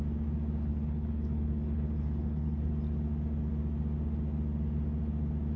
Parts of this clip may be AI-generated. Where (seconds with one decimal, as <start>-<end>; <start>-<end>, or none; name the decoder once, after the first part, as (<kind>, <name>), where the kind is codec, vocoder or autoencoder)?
0.7-2.7 (codec, HILCodec)